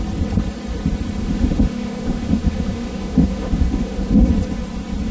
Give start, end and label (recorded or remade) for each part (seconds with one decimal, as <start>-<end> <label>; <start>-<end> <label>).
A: 0.0-1.2 recorded; 1.2-4.3 remade; 4.3-5.1 recorded